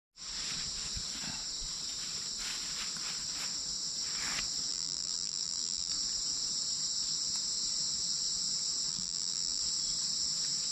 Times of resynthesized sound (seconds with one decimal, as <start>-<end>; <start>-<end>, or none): 4.7-5.9; 8.9-9.6